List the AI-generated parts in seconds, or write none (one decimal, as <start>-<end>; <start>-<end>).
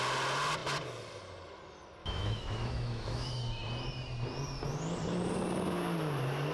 2.0-3.3